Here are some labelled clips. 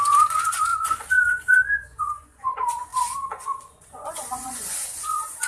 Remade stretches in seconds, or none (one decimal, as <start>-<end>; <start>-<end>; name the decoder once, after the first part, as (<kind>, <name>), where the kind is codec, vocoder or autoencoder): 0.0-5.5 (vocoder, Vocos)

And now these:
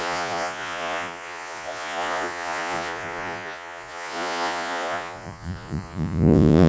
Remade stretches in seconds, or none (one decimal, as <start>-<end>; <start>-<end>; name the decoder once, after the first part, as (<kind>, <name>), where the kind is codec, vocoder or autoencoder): 0.0-6.7 (vocoder, Vocos)

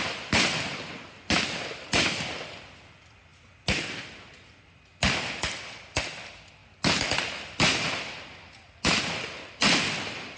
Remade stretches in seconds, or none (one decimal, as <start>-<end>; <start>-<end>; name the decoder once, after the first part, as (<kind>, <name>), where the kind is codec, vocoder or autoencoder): none

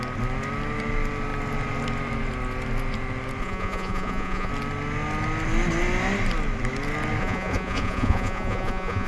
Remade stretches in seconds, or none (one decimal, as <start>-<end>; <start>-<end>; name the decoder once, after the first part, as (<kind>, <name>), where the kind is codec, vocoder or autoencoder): 3.4-4.5 (vocoder, Vocos); 7.2-9.1

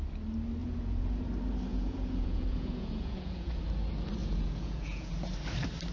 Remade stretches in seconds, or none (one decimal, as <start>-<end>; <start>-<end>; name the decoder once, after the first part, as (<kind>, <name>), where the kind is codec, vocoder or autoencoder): 0.6-1.2 (vocoder, Vocos); 1.7-3.6; 4.2-5.1

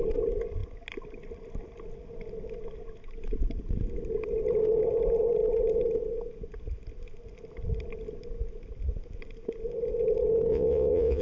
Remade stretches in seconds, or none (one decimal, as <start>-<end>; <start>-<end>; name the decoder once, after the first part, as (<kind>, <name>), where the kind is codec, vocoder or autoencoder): 10.5-11.2 (vocoder, Vocos)